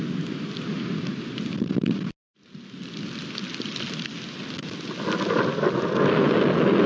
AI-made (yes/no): no